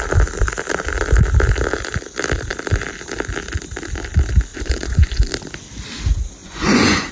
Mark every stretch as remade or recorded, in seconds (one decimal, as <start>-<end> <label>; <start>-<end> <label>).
0.0-4.5 recorded; 4.5-5.3 remade; 5.3-6.4 recorded; 6.4-7.1 remade